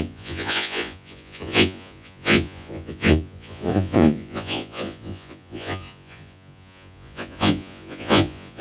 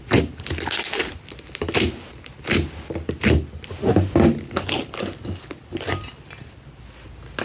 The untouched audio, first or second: second